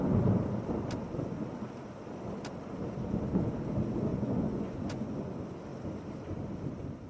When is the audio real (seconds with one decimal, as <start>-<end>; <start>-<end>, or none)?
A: 0.0-4.1; 5.3-7.1